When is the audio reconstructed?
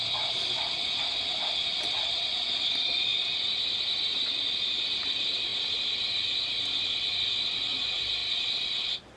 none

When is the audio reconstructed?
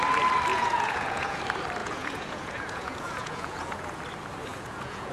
0.5-1.4 (vocoder, Vocos); 1.8-4.0; 4.5-5.1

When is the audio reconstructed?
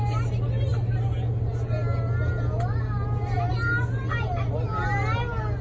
none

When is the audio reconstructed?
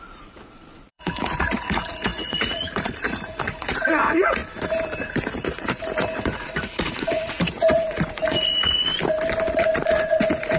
0.0-4.4 (vocoder, Vocos); 5.1-8.9; 9.5-10.6